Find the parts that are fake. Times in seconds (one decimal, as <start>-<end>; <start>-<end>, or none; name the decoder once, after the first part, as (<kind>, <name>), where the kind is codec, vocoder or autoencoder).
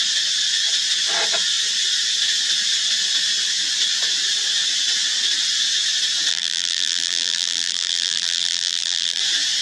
6.3-9.2 (vocoder, BigVGAN v2)